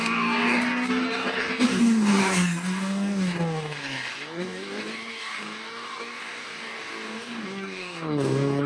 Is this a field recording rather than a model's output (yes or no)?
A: no